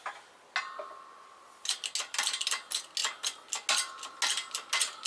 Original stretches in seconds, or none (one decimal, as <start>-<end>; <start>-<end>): 0.0-5.1